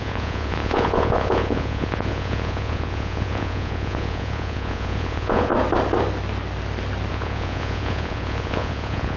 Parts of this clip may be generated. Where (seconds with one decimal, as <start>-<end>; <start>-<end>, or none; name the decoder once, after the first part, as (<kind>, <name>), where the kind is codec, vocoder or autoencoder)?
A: 0.0-5.5 (vocoder, Vocos); 7.1-9.2